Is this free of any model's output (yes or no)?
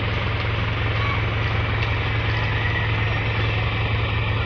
yes